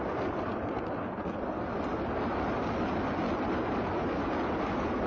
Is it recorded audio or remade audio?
recorded